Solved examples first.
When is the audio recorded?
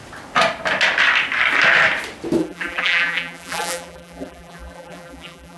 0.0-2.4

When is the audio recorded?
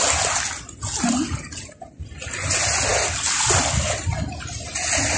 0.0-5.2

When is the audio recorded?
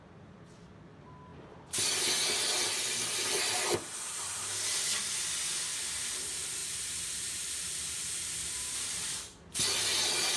0.0-6.6; 8.1-10.4